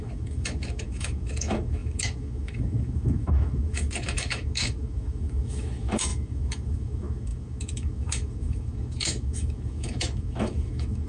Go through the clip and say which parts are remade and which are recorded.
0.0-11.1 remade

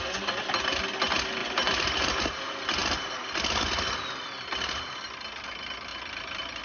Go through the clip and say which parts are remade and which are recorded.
0.0-1.4 recorded; 1.4-2.4 remade; 2.4-5.9 recorded; 5.9-6.6 remade